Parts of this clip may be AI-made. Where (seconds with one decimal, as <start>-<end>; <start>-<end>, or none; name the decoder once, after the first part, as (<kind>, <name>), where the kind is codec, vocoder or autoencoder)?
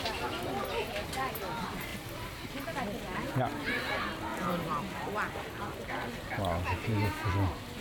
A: 1.9-2.6 (vocoder, BigVGAN v2); 4.3-7.3